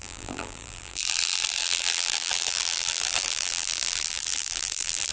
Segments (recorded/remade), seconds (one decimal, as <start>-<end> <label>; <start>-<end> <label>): 0.0-5.1 remade